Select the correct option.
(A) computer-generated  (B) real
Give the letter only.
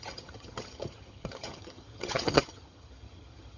A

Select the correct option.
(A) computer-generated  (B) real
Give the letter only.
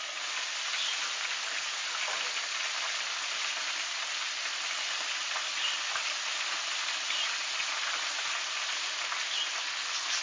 B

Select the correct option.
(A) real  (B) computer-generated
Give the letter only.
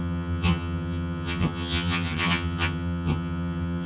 B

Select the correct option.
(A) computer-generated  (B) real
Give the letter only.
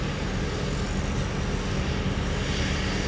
B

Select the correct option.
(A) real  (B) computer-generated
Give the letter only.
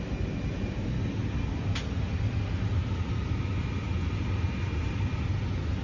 A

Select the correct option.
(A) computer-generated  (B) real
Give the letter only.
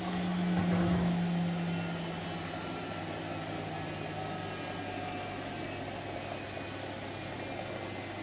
B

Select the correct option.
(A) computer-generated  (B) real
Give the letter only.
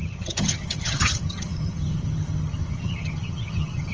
A